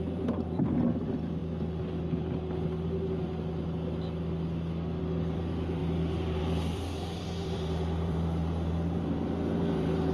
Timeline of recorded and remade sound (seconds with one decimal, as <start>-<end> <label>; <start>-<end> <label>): 0.0-1.4 remade; 1.4-5.0 recorded; 5.0-10.1 remade